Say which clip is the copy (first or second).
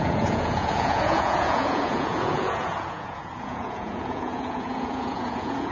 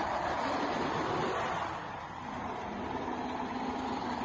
first